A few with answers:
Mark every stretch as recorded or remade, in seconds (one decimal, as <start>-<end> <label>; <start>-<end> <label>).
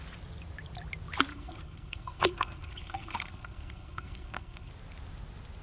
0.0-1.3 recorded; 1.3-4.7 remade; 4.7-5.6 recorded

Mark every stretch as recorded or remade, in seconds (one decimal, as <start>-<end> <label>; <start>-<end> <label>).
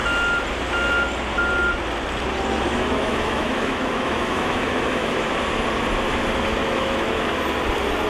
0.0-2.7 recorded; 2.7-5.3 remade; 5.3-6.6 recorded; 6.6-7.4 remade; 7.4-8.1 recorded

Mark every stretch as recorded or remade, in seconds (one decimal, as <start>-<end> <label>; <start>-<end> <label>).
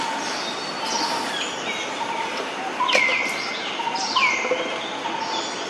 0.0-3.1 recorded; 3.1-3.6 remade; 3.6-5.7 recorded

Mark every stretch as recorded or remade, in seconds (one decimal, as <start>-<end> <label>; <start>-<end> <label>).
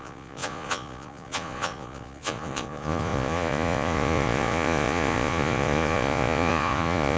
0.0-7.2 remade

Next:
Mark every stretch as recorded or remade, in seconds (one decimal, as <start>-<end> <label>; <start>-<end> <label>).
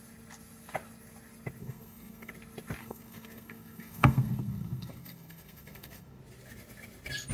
0.0-1.6 recorded; 1.6-2.3 remade; 2.3-2.8 recorded; 2.8-6.2 remade; 6.2-7.3 recorded